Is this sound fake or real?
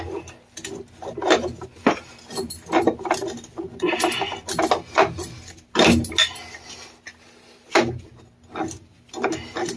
real